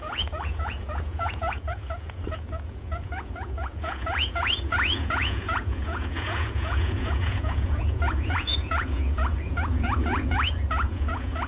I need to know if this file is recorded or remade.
remade